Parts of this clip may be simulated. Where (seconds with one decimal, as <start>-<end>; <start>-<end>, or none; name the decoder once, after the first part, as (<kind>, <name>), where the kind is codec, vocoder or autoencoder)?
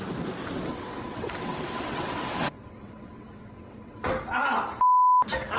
0.7-4.1 (vocoder, WaveNeXt)